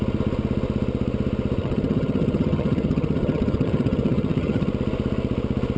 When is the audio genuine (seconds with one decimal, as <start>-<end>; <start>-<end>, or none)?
0.0-1.6; 4.7-5.8